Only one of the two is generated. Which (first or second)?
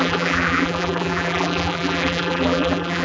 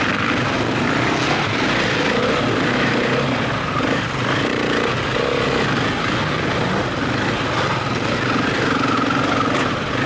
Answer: first